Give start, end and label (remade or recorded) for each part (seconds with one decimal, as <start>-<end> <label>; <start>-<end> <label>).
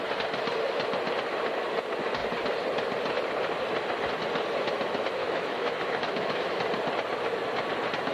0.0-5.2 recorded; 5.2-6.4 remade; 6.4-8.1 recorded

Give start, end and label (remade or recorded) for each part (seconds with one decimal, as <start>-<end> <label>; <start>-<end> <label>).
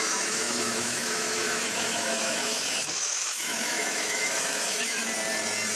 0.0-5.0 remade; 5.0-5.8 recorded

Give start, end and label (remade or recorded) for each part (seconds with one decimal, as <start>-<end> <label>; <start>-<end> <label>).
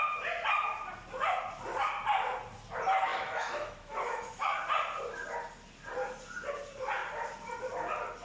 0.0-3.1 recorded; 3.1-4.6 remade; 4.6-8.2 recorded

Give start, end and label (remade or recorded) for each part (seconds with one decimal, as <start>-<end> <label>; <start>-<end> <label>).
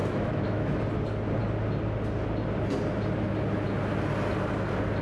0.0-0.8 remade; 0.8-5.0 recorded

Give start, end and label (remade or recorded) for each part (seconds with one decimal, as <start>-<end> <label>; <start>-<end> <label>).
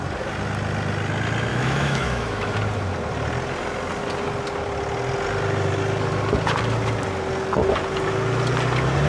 0.0-1.5 recorded; 1.5-2.5 remade; 2.5-9.1 recorded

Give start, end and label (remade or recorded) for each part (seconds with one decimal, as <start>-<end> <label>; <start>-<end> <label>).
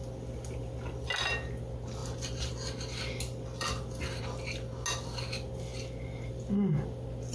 0.0-7.3 recorded